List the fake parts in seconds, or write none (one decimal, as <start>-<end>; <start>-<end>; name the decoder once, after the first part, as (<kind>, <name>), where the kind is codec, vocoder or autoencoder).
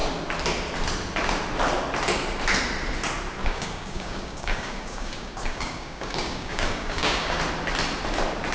3.4-7.4 (codec, DAC)